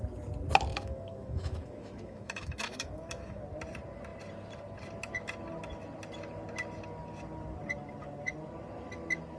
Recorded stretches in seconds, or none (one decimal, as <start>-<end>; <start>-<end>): 0.0-0.7; 3.4-9.4